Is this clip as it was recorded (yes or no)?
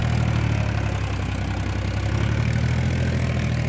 yes